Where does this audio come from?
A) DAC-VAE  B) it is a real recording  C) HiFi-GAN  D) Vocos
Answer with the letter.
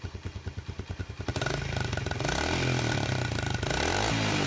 B